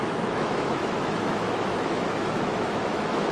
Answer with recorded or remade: remade